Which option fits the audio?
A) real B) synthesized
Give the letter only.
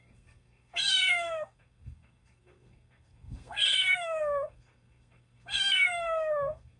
B